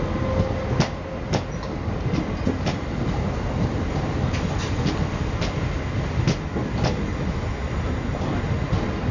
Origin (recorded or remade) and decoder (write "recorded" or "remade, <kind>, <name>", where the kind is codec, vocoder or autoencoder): recorded